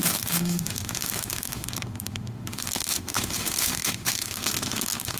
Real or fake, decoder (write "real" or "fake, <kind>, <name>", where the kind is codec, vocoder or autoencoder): fake, autoencoder, DAC-VAE